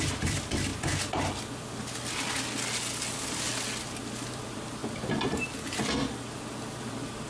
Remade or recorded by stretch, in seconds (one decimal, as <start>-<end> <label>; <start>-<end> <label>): 0.0-0.7 remade; 0.7-4.3 recorded; 4.3-4.8 remade; 4.8-6.8 recorded; 6.8-7.3 remade